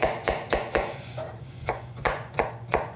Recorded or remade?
remade